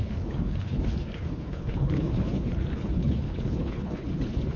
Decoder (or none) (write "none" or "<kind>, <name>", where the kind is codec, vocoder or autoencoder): codec, HILCodec